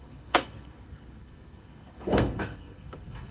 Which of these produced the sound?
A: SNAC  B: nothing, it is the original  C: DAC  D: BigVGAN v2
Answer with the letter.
A